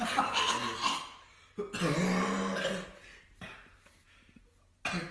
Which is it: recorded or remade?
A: recorded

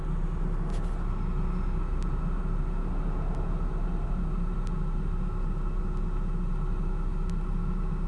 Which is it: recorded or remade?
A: recorded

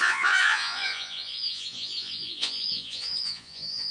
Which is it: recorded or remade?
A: remade